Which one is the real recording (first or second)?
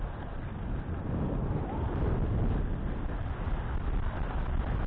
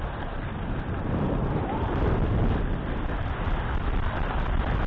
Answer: first